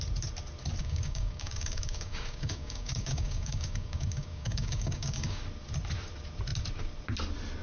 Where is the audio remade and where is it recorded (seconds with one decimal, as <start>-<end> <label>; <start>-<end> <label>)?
0.0-0.8 recorded; 0.8-5.4 remade; 5.4-7.6 recorded